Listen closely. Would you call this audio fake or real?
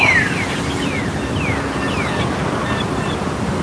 real